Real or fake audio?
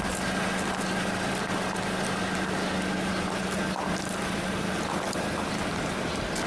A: real